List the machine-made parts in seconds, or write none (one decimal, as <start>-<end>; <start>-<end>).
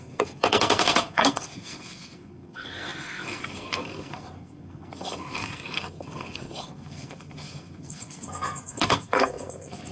0.0-9.9